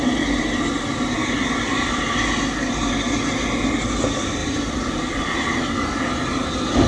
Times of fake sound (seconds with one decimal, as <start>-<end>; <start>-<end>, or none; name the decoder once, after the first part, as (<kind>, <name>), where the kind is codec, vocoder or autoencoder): 1.2-2.9 (vocoder, BigVGAN v2); 4.4-5.2